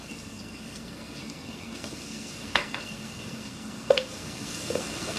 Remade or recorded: remade